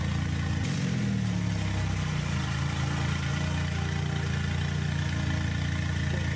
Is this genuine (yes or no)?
yes